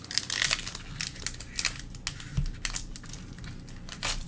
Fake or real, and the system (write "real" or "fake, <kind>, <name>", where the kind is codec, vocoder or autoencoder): real